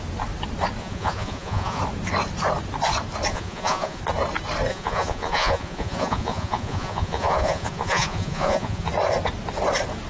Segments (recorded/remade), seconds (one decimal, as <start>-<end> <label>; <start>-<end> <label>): 0.0-0.8 recorded; 0.8-1.8 remade; 1.8-3.3 recorded; 3.3-4.0 remade; 4.0-4.7 recorded; 4.7-8.9 remade; 8.9-10.1 recorded